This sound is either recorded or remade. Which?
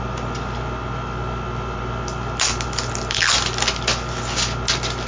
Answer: recorded